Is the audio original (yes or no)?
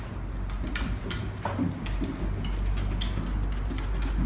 yes